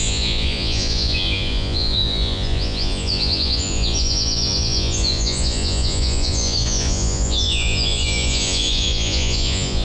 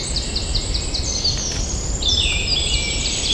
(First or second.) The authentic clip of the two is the second